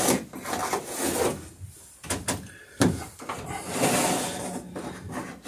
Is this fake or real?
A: real